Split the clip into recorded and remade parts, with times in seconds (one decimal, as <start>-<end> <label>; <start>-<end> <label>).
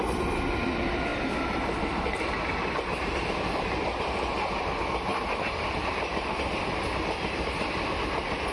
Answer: 0.0-8.5 recorded